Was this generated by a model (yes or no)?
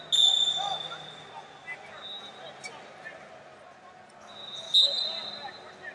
no